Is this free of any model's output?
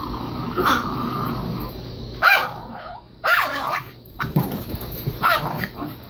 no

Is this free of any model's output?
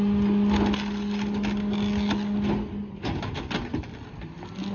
yes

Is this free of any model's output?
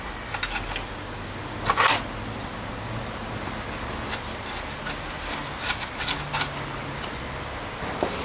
yes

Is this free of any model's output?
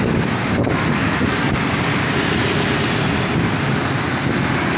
yes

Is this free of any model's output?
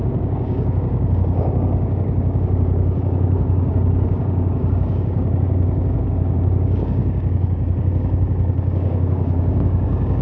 no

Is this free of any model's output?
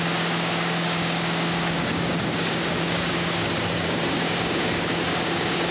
no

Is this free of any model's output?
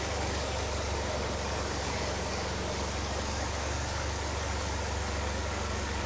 no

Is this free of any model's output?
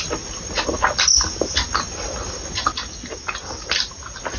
yes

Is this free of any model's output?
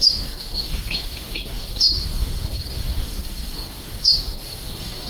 no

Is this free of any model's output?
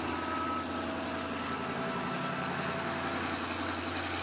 yes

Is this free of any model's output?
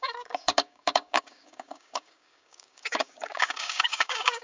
no